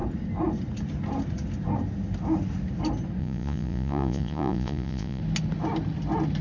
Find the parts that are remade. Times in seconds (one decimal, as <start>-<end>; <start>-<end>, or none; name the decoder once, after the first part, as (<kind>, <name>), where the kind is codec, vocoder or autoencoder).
3.2-5.2 (vocoder, Vocos)